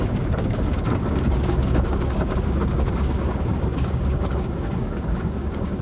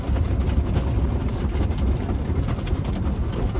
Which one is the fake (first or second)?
first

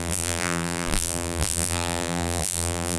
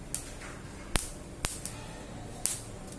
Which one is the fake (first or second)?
first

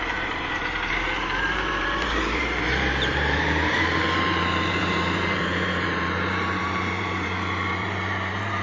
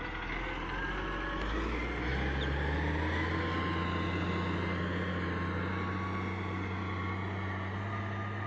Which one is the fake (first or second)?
first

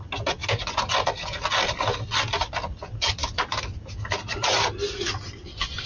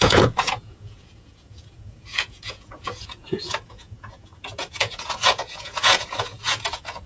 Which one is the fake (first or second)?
second